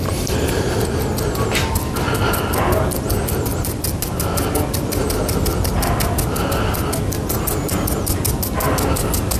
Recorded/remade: recorded